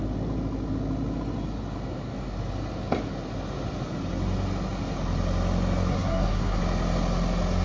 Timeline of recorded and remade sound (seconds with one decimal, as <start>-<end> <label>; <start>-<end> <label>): 0.0-5.9 recorded; 5.9-6.6 remade; 6.6-7.6 recorded

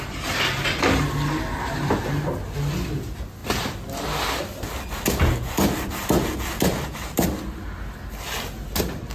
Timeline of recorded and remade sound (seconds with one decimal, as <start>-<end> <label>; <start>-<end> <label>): 0.0-9.1 recorded

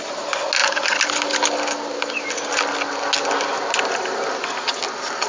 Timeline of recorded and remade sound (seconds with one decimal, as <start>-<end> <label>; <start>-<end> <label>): 0.0-5.3 recorded

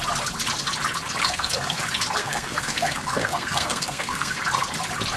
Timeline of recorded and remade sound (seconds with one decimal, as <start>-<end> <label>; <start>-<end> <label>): 0.0-1.2 recorded; 1.2-1.8 remade; 1.8-2.2 recorded; 2.2-4.4 remade; 4.4-5.2 recorded